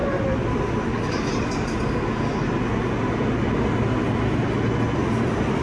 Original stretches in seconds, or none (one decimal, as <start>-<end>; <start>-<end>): 0.0-5.6

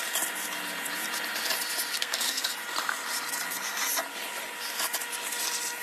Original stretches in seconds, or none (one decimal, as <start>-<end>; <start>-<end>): 0.0-1.9; 2.5-5.8

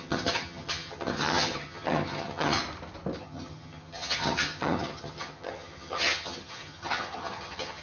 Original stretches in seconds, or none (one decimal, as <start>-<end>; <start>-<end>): 2.6-3.2

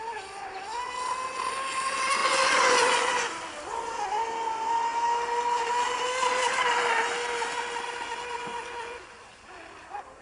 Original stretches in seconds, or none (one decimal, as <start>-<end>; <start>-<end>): 0.0-2.2; 3.1-8.3; 9.6-10.2

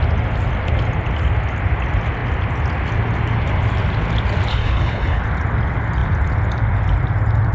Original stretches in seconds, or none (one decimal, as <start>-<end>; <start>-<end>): 0.0-4.5; 5.2-7.5

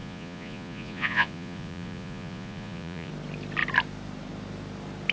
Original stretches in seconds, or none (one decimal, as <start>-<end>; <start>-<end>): 3.1-5.1

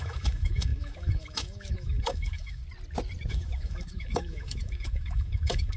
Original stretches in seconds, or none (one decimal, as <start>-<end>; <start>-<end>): 2.6-3.3

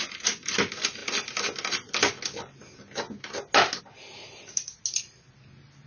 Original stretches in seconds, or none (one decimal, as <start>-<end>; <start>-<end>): 0.0-5.9